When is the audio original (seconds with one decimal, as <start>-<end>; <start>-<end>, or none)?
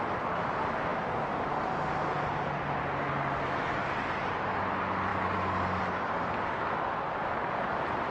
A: 0.0-8.1